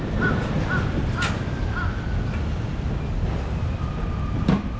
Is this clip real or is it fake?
real